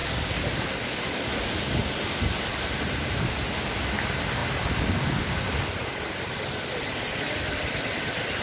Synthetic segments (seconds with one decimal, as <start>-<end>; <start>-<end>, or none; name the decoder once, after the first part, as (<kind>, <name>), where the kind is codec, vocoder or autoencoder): 2.5-3.6 (vocoder, BigVGAN v2)